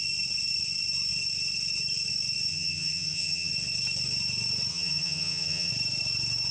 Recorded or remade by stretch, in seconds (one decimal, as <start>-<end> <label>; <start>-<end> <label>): 0.0-2.5 recorded; 2.5-3.5 remade; 3.5-4.7 recorded; 4.7-5.7 remade; 5.7-6.5 recorded